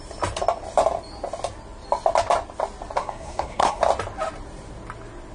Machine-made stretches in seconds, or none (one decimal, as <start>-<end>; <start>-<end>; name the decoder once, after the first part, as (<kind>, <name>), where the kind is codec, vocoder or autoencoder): 3.0-3.8 (codec, SNAC)